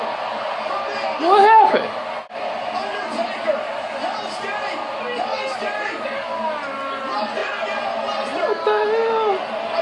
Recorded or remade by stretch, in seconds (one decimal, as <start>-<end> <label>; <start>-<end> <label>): 0.0-9.8 recorded